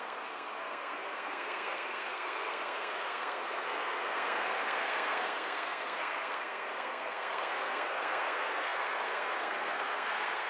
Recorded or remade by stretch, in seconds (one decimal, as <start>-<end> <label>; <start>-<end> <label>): 0.0-10.5 remade